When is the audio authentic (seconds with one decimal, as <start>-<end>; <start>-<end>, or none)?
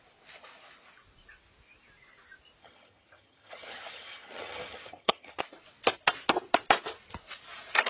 0.0-2.6; 5.4-7.9